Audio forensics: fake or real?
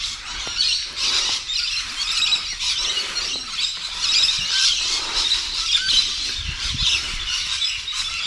fake